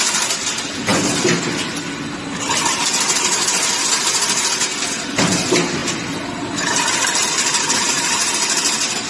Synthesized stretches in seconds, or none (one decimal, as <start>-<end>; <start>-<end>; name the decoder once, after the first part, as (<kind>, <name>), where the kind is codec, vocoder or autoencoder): none